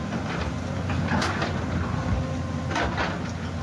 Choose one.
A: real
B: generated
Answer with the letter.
A